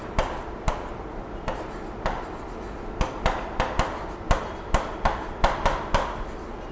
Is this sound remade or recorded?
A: recorded